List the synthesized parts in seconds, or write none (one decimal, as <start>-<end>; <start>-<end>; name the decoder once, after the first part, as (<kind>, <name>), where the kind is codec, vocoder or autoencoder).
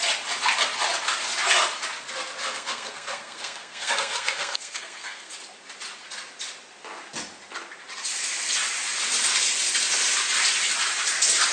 2.4-5.3 (codec, SNAC)